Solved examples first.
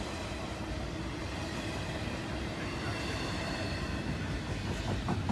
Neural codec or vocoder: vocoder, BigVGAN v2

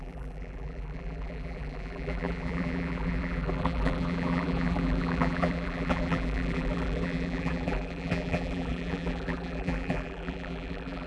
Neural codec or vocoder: vocoder, BigVGAN v2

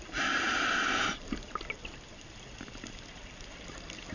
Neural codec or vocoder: none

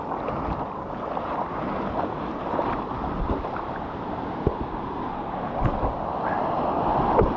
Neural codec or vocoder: none